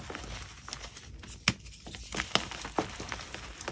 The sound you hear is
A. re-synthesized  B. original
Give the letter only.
B